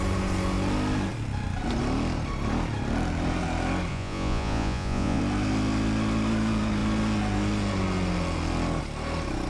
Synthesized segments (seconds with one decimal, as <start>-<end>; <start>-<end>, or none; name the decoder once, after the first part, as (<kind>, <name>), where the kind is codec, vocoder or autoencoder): 3.9-5.2 (vocoder, Vocos)